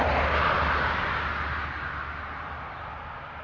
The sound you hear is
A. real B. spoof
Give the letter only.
A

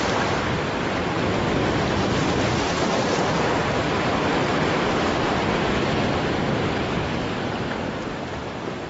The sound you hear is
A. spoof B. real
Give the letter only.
B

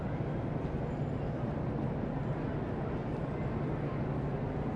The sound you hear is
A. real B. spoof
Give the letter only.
A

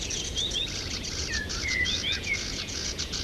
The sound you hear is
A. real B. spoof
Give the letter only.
B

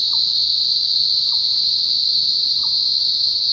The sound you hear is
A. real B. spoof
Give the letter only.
A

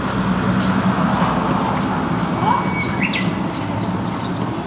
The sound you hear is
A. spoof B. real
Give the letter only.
B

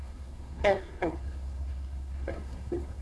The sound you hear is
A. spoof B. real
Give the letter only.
A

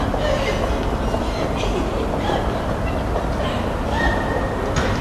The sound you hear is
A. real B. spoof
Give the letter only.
A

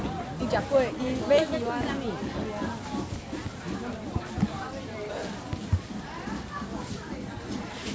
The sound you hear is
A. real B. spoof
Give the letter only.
A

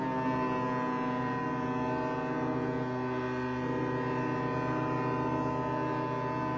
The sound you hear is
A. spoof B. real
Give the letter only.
B